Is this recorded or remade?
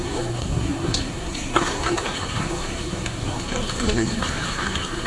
remade